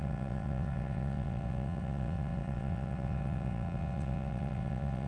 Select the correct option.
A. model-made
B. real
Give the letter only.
A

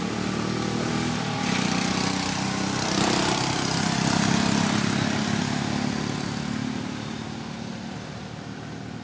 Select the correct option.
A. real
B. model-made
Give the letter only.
A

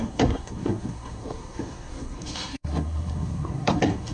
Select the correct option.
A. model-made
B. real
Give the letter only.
A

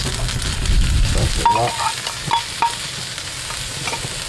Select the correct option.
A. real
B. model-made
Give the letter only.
A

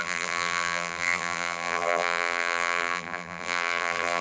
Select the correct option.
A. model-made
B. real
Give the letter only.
A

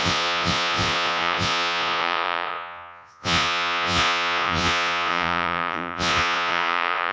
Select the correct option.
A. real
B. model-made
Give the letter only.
B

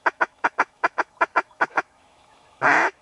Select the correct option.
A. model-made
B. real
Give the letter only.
A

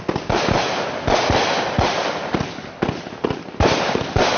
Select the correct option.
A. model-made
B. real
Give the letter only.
B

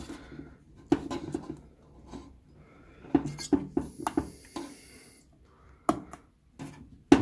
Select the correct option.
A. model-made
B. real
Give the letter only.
B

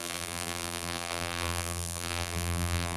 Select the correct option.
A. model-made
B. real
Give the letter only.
A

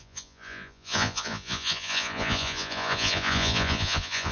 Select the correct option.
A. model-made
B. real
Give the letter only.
A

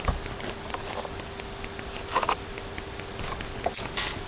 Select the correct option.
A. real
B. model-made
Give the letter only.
A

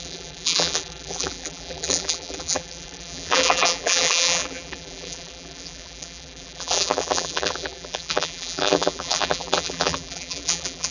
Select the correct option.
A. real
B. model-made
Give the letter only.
B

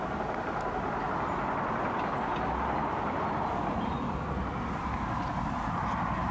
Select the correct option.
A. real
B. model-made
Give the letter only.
A